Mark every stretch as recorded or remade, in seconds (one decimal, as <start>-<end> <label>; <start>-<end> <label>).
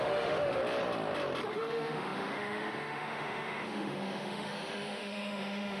0.0-0.6 remade; 0.6-1.5 recorded; 1.5-5.8 remade